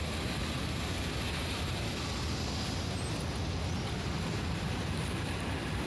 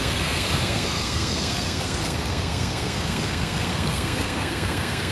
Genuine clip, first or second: first